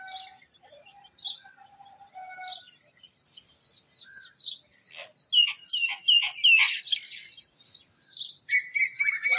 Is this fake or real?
real